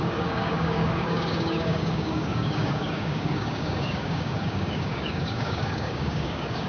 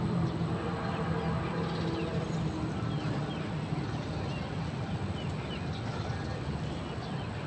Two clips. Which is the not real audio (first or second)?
first